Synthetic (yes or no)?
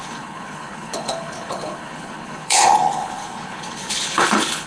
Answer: yes